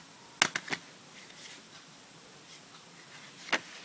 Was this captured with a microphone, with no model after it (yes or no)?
yes